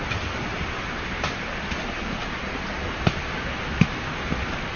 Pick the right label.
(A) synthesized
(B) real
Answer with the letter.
B